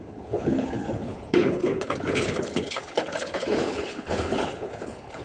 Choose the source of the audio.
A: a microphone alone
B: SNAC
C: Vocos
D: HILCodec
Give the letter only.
D